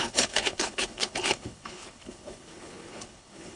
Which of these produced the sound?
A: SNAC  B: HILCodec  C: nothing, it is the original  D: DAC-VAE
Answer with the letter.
B